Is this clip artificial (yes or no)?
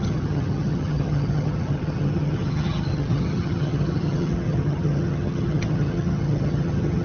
yes